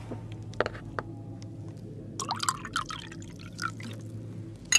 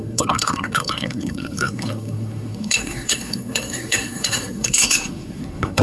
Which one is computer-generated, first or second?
second